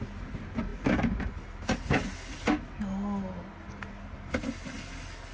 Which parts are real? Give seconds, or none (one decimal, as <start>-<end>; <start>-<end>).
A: 0.0-5.3